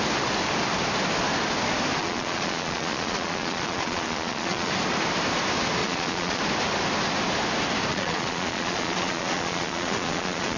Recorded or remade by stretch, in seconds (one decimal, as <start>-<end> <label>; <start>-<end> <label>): 0.0-2.0 recorded; 2.0-4.7 remade; 4.7-5.8 recorded; 5.8-6.4 remade; 6.4-7.9 recorded; 7.9-10.6 remade